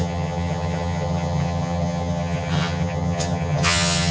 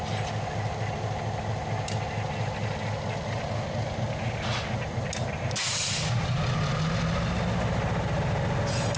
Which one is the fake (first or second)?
first